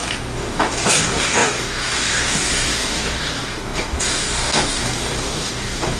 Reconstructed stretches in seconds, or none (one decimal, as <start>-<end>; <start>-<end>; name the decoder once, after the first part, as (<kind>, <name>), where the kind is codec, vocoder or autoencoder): 0.0-6.0 (codec, DAC)

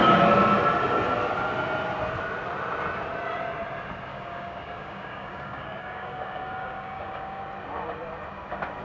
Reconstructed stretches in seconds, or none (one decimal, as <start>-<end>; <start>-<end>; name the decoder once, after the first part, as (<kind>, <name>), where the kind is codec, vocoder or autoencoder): 4.1-7.4 (codec, DAC)

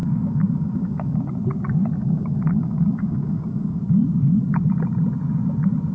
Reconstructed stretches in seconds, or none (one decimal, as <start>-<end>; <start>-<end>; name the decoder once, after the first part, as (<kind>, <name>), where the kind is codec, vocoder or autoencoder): 0.0-1.2 (codec, DAC); 2.0-3.8

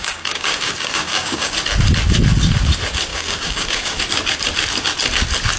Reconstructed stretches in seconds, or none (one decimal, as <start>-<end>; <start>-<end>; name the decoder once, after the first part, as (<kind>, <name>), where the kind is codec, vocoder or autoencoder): 0.0-1.5 (codec, DAC); 3.1-4.0